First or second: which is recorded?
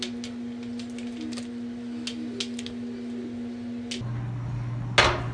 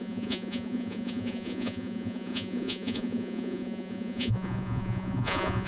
first